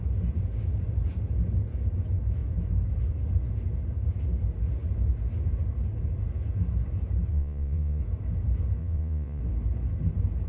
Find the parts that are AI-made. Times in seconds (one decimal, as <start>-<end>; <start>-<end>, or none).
7.3-8.0; 8.8-9.4